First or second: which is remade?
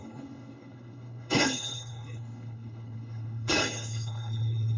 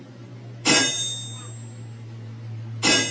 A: first